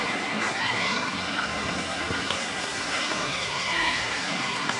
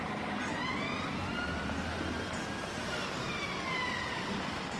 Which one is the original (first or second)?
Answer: second